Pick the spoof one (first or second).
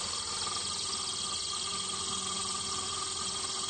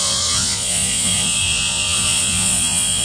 second